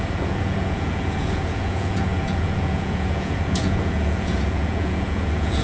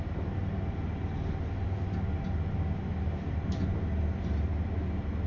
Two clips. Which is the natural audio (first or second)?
second